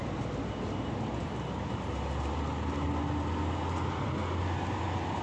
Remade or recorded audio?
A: recorded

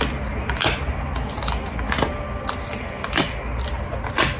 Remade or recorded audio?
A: recorded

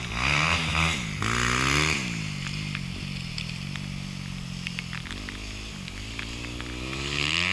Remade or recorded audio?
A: recorded